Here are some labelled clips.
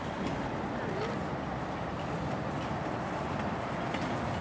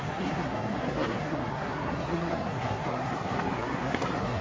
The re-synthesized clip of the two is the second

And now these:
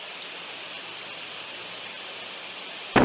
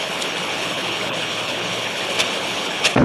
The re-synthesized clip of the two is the second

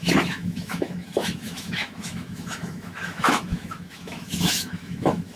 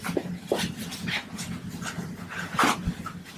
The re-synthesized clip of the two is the first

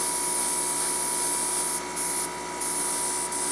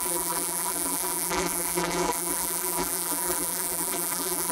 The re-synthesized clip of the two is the second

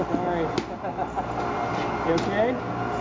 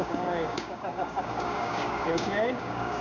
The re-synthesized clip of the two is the second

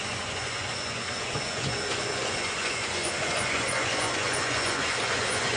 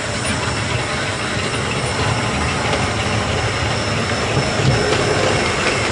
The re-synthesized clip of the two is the first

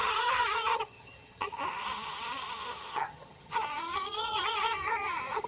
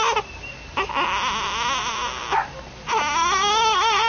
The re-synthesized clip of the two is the first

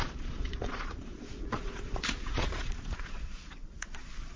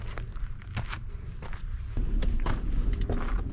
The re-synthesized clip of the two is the first